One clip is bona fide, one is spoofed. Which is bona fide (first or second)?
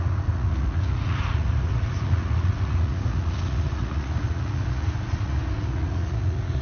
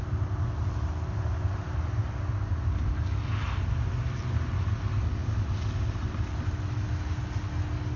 second